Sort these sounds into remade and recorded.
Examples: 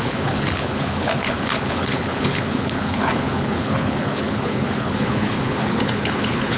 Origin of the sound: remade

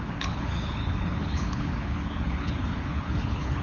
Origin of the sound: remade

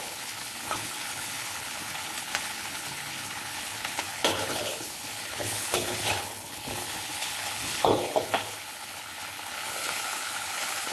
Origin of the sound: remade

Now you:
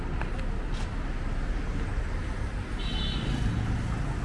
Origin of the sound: recorded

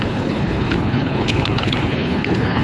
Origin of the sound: remade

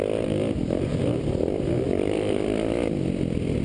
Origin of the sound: recorded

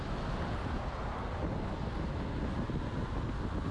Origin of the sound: recorded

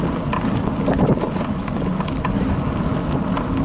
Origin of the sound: recorded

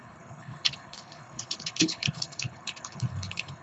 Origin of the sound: remade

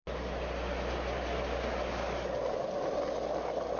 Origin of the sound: recorded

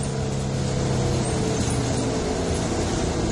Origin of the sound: recorded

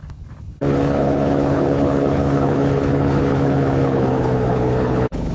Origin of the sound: remade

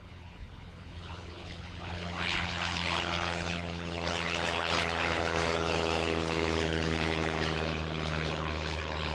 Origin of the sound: remade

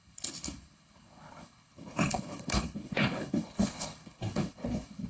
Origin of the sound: remade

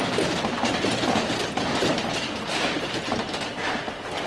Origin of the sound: recorded